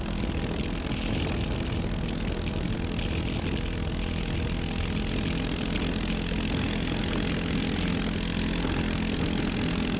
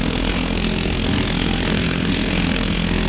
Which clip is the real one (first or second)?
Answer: first